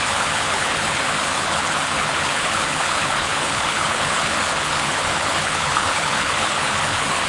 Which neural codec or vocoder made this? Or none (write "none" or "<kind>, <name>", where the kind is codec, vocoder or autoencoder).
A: codec, HILCodec